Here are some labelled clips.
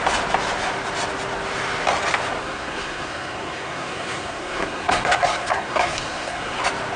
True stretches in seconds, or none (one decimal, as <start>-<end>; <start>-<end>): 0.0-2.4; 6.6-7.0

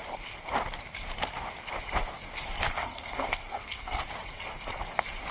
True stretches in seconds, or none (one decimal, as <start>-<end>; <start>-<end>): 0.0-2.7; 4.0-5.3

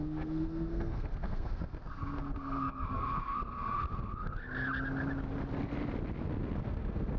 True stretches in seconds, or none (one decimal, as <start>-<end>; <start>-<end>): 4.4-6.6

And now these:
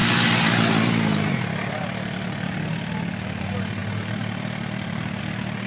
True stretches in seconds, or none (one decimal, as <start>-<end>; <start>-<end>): 0.0-5.7

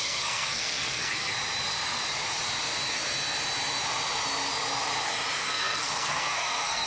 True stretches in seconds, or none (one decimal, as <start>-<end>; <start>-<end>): 1.3-5.4